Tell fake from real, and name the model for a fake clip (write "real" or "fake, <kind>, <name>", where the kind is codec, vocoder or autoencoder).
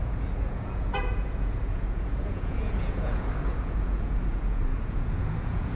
fake, vocoder, Vocos